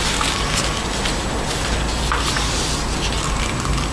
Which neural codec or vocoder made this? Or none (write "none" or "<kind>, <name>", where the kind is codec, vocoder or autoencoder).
none